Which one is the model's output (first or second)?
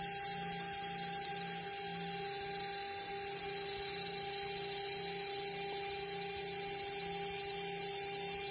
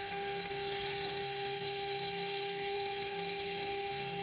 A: second